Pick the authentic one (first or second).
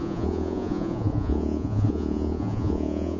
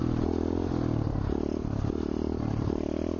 second